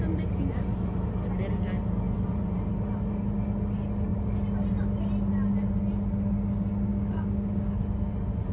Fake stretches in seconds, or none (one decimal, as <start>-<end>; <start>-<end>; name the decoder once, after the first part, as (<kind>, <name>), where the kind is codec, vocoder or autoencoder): 6.9-7.7 (codec, DAC)